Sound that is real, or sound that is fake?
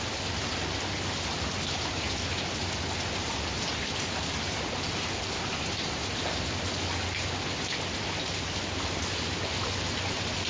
real